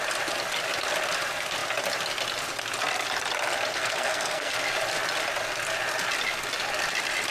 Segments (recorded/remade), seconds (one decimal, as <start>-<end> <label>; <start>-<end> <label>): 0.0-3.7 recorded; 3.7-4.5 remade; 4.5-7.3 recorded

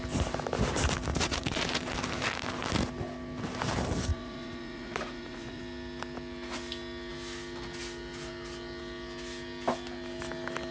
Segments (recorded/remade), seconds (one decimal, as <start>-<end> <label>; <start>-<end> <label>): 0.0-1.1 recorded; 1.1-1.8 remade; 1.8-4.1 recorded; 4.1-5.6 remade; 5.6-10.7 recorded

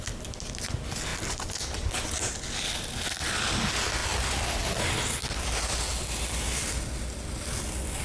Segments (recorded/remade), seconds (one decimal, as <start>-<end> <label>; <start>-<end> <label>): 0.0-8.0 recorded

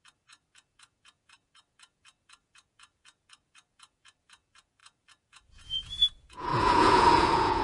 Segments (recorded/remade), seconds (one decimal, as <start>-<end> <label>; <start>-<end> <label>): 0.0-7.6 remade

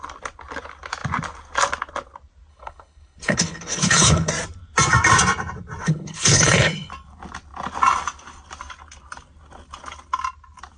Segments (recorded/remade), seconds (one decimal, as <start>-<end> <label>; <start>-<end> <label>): 0.0-2.5 recorded; 2.5-4.3 remade; 4.3-5.8 recorded; 5.8-6.9 remade; 6.9-10.8 recorded

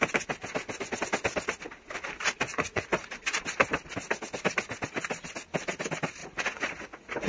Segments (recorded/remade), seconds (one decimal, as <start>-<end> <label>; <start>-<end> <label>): 0.0-2.5 recorded; 2.5-3.2 remade; 3.2-6.2 recorded; 6.2-7.3 remade

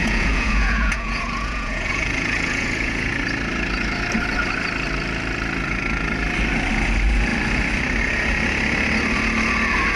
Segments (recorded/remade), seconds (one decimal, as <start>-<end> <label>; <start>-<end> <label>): 0.0-3.1 remade; 3.1-10.0 recorded